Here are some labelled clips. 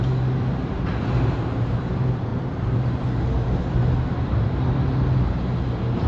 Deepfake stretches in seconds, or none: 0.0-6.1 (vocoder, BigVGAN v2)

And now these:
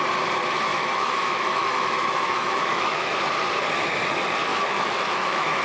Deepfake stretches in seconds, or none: 0.7-3.2 (autoencoder, DAC-VAE); 4.5-5.6

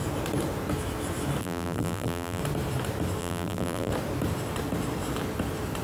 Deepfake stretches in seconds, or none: 1.4-2.4 (vocoder, BigVGAN v2); 3.2-3.9

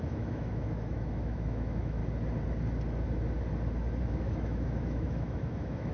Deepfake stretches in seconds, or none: 0.0-2.0 (autoencoder, DAC-VAE); 4.0-5.9

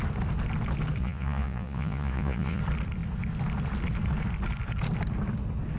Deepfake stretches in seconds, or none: 1.0-2.6 (vocoder, Vocos)

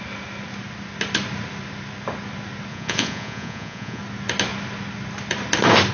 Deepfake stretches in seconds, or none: 2.7-4.0 (vocoder, Vocos)

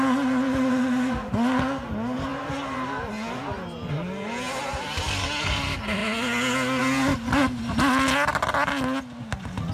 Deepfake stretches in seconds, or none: none

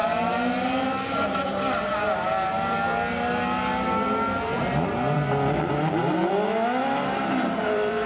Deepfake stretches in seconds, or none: 1.5-1.9 (vocoder, BigVGAN v2); 6.8-8.1